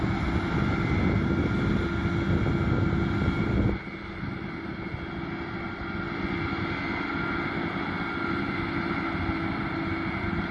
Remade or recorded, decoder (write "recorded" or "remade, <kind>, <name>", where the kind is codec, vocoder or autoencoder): recorded